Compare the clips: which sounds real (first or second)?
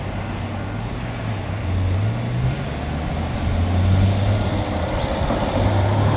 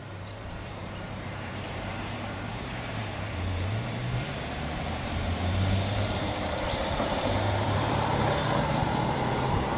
first